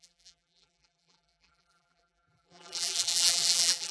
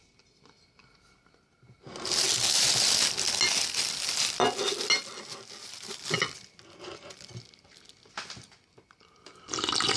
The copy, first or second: first